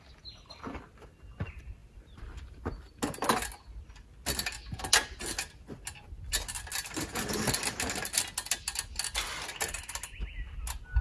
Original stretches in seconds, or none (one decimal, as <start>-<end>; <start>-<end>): 0.0-1.8; 2.9-11.0

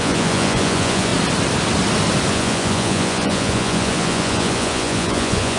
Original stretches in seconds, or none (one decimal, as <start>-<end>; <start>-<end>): 1.1-2.3

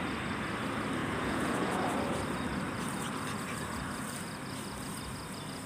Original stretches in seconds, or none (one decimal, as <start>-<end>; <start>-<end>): 0.0-1.0; 1.8-5.7